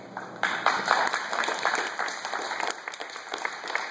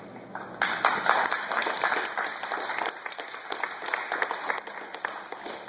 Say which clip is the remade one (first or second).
first